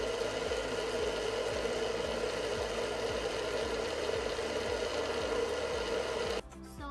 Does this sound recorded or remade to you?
recorded